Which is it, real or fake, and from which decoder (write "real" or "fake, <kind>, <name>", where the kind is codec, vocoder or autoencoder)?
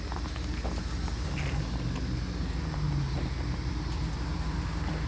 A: real